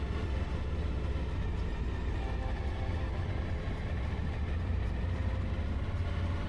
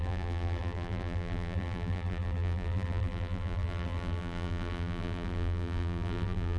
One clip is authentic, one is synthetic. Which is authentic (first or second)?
first